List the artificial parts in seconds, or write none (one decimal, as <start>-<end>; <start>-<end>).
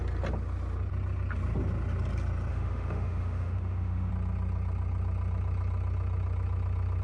2.5-4.1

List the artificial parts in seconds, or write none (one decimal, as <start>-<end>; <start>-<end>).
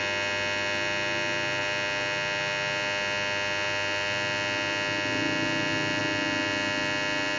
none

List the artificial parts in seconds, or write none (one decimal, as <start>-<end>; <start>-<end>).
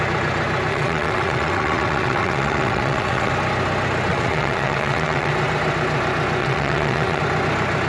0.7-3.3; 4.1-5.3; 6.4-7.2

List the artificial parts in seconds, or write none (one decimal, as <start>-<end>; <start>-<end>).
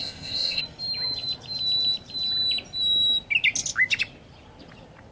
0.0-0.6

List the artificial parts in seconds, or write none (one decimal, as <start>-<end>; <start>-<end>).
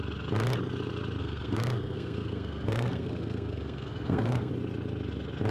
1.2-4.5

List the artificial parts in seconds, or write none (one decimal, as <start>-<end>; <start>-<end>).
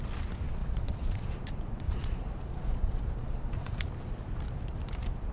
0.6-3.8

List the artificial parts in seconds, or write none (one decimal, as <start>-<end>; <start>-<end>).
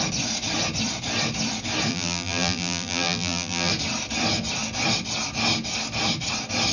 1.9-3.7